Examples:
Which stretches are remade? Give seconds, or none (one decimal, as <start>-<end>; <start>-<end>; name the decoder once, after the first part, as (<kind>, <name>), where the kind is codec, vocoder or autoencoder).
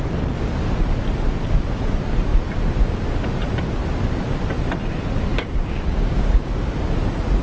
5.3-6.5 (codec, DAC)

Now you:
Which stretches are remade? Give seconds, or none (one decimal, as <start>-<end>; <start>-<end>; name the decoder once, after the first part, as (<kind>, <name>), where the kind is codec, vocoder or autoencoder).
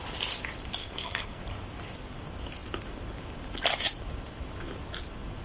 0.8-1.4 (codec, SNAC)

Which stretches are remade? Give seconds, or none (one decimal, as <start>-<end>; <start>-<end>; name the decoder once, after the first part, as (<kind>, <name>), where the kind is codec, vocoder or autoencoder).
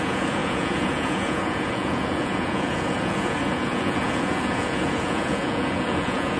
0.0-6.4 (vocoder, Vocos)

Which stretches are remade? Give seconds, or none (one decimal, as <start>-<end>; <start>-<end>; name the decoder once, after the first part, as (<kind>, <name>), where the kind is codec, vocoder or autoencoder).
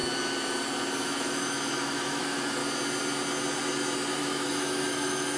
1.0-2.6 (autoencoder, DAC-VAE); 4.2-5.4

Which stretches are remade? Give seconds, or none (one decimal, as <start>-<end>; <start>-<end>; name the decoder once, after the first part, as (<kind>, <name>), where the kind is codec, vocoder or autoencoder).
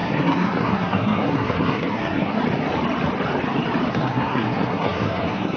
0.0-2.4 (codec, SNAC); 3.9-5.6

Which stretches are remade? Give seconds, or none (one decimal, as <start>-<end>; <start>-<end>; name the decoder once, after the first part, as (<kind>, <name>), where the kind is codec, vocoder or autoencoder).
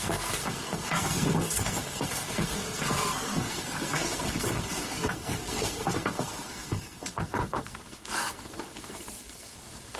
0.0-10.0 (codec, SNAC)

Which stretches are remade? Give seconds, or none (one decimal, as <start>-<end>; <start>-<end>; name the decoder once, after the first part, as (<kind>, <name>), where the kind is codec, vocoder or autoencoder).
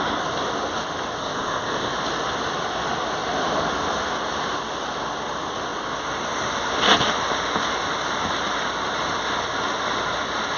1.2-1.9 (codec, ZipCodec)